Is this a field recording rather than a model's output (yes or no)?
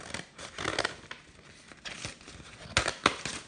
yes